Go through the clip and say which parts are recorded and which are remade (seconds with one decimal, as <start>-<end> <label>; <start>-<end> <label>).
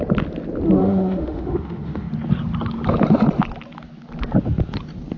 0.0-0.8 recorded; 0.8-2.1 remade; 2.1-5.2 recorded